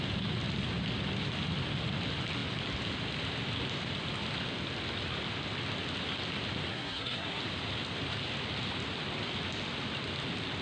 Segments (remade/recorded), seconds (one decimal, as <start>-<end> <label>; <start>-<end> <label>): 0.0-6.7 recorded; 6.7-7.4 remade; 7.4-10.6 recorded